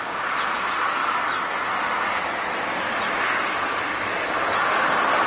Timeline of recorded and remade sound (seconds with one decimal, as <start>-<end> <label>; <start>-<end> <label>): 0.0-5.3 recorded